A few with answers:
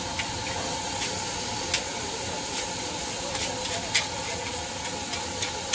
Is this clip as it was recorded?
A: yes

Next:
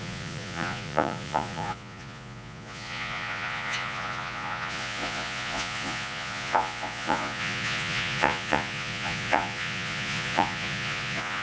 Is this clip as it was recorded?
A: no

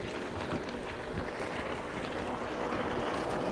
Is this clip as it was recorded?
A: yes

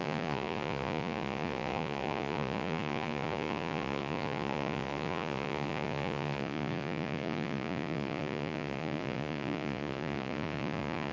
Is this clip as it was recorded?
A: no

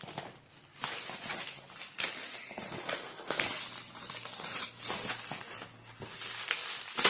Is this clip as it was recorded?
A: yes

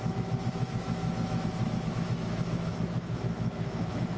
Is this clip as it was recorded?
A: no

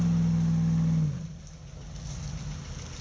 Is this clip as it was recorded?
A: yes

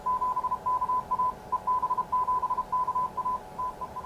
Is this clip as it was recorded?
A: yes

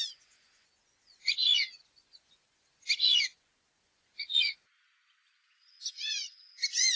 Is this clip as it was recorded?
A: no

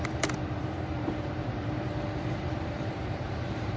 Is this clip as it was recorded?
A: no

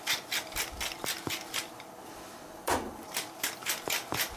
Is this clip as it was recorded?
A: no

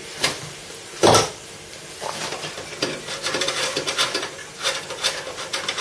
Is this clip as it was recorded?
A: yes